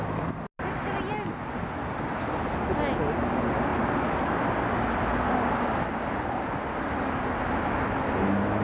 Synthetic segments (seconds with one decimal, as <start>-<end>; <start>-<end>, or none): none